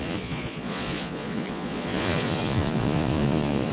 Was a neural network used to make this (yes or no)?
yes